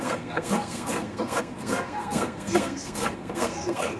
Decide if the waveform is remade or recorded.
remade